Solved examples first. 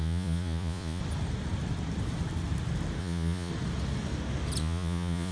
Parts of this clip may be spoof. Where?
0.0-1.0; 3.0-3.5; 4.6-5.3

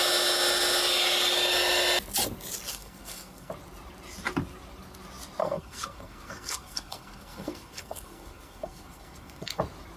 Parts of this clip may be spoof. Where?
2.7-3.5; 5.4-9.6

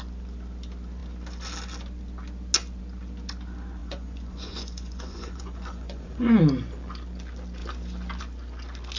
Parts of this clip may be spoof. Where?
3.8-6.4

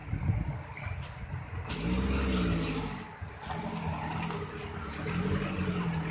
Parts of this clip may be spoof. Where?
none

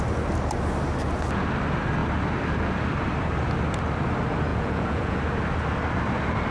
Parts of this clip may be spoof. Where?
4.5-5.2

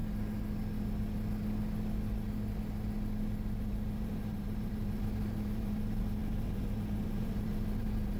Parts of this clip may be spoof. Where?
3.6-8.2

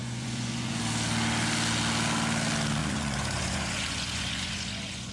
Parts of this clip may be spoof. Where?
0.0-0.8; 2.8-5.1

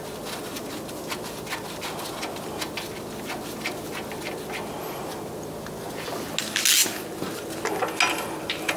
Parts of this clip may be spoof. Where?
none